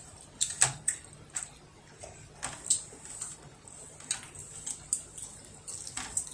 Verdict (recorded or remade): recorded